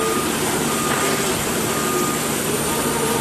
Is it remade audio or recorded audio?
recorded